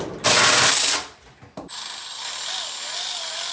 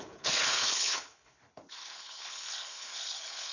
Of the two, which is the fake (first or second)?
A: second